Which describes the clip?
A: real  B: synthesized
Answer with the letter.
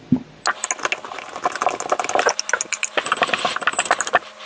A